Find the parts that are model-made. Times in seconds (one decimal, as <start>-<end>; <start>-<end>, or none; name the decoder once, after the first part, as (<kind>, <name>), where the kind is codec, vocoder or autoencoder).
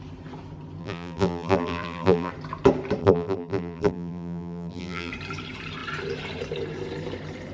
0.8-2.3 (vocoder, BigVGAN v2); 3.0-5.1